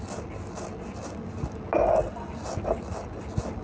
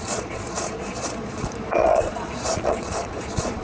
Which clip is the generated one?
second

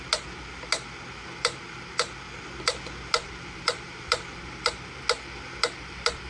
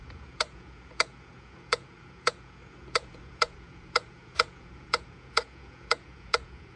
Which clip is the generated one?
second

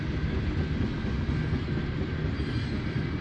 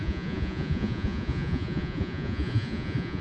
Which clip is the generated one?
second